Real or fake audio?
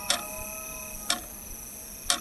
real